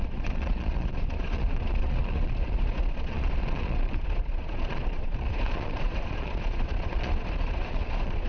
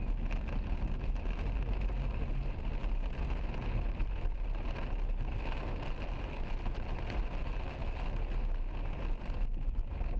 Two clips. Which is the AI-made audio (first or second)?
first